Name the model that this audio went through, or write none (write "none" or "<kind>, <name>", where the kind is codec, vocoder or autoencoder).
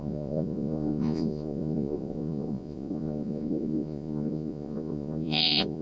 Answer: vocoder, Vocos